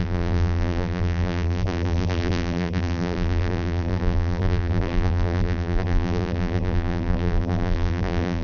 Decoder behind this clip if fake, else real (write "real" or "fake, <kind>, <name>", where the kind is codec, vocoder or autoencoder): fake, vocoder, BigVGAN v2